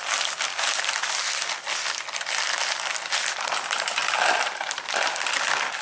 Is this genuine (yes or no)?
yes